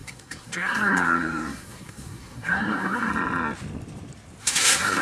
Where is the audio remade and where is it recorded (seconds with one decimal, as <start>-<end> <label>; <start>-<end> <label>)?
0.0-3.1 remade; 3.1-4.4 recorded; 4.4-5.0 remade